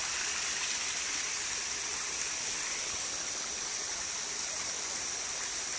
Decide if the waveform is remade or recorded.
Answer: recorded